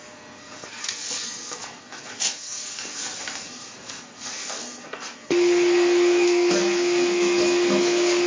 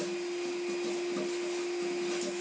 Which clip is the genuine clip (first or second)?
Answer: second